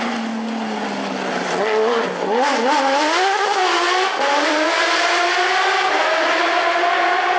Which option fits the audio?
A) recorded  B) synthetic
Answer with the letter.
A